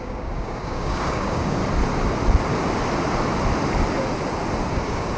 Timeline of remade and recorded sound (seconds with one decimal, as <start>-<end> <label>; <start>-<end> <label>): 0.0-1.6 remade; 1.6-4.7 recorded; 4.7-5.2 remade